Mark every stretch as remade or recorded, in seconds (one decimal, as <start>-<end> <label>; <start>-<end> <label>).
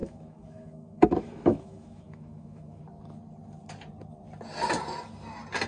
0.0-2.8 remade; 2.8-5.7 recorded